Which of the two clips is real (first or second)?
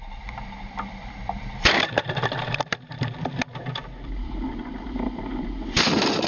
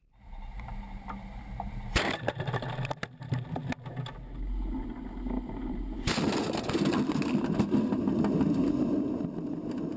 second